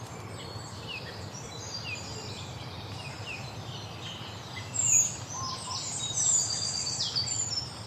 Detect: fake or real fake